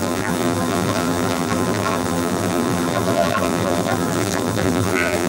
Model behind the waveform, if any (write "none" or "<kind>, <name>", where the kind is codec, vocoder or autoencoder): vocoder, BigVGAN v2